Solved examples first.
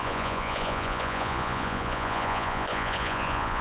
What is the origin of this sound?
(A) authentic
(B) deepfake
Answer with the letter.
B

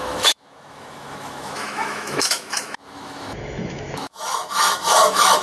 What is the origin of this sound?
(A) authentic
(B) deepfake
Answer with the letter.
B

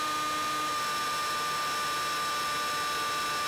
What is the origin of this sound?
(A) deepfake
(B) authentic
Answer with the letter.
B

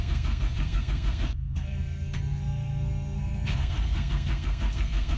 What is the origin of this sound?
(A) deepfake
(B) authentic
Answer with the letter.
A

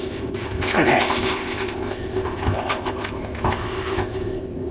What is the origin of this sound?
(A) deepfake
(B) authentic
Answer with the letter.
A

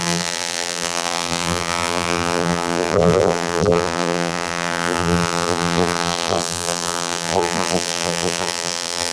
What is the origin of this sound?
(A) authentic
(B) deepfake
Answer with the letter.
B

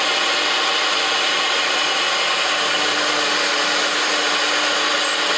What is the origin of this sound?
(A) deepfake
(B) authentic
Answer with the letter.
B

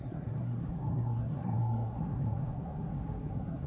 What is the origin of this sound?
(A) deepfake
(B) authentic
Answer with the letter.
A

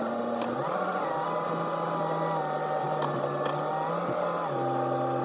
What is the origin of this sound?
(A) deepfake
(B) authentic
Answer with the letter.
B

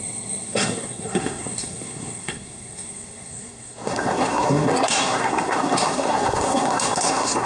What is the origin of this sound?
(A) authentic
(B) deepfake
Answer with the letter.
B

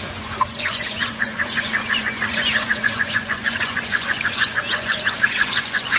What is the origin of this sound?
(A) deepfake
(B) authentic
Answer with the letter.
A